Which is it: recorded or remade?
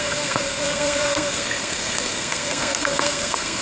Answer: remade